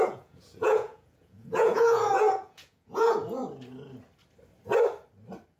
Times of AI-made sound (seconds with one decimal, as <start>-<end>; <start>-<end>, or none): 0.0-3.4